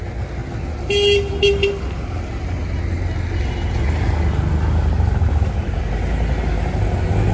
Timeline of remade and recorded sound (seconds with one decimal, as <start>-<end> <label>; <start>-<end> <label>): 0.0-7.3 recorded